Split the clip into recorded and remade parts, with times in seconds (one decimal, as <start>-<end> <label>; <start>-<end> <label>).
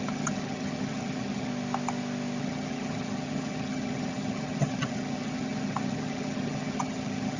0.0-1.5 remade; 1.5-2.4 recorded; 2.4-7.4 remade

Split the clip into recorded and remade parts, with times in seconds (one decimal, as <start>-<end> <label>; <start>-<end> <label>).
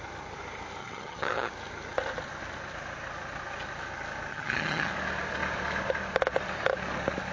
0.0-0.8 recorded; 0.8-1.5 remade; 1.5-4.3 recorded; 4.3-4.9 remade; 4.9-7.3 recorded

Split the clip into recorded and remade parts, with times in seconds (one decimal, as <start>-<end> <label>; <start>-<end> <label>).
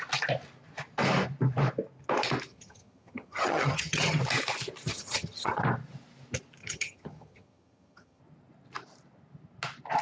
0.0-2.5 recorded; 2.5-4.2 remade; 4.2-4.9 recorded; 4.9-5.6 remade; 5.6-6.6 recorded; 6.6-8.2 remade; 8.2-10.0 recorded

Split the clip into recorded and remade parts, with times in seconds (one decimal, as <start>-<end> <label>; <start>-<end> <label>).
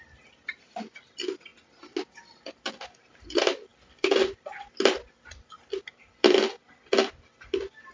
0.0-7.9 recorded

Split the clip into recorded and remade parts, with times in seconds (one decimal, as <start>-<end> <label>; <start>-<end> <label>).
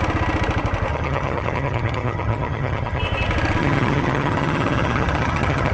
0.0-0.9 recorded; 0.9-3.0 remade; 3.0-3.6 recorded; 3.6-5.7 remade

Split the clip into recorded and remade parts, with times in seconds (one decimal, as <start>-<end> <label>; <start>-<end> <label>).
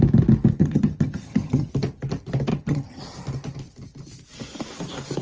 0.0-0.6 recorded; 0.6-1.7 remade; 1.7-2.5 recorded; 2.5-3.0 remade; 3.0-5.2 recorded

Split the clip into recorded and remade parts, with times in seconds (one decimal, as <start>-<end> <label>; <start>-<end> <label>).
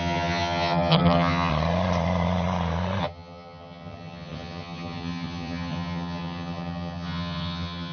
0.0-1.5 remade; 1.5-3.0 recorded; 3.0-7.9 remade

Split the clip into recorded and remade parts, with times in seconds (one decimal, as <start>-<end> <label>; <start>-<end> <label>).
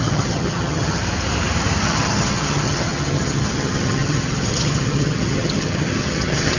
0.0-1.0 remade; 1.0-1.8 recorded; 1.8-6.6 remade